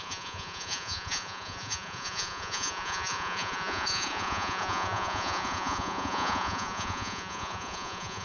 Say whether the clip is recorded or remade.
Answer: remade